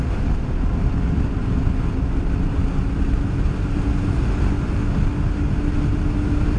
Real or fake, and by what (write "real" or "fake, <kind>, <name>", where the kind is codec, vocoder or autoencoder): real